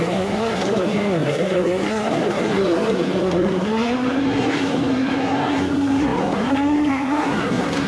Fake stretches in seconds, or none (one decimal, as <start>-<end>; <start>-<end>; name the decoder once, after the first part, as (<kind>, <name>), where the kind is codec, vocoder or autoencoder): 0.0-7.9 (codec, SNAC)